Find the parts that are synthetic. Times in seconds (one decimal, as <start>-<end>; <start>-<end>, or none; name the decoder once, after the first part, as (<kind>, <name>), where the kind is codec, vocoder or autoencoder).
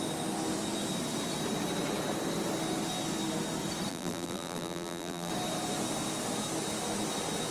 3.9-5.3 (vocoder, BigVGAN v2)